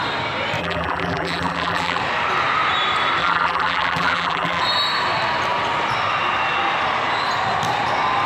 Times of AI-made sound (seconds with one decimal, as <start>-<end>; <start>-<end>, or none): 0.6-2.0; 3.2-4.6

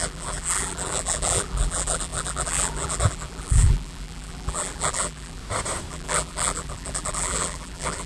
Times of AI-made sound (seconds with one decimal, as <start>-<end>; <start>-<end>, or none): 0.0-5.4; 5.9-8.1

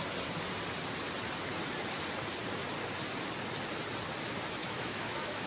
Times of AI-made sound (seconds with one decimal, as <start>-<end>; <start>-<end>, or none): 4.6-5.5

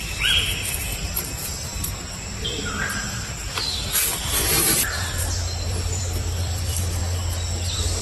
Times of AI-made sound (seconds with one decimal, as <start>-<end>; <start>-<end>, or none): 0.0-0.9; 5.7-7.0

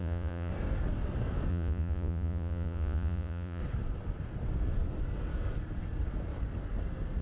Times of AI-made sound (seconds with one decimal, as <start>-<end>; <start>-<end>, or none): 0.0-0.5; 1.5-3.6

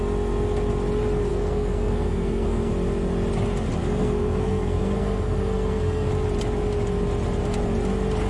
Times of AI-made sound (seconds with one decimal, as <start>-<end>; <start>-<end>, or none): 1.3-2.7; 3.8-6.1

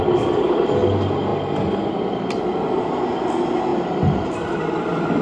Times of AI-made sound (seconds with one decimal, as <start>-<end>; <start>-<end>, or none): none